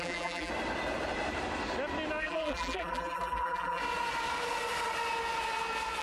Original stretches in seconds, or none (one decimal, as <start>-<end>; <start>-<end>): 0.5-2.2; 3.8-6.0